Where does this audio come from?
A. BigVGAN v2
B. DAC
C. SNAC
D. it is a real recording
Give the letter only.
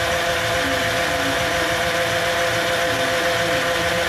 D